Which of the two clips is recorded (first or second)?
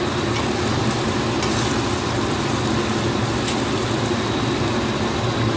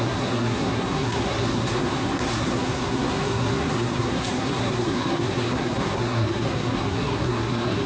first